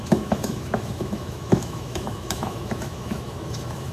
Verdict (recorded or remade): remade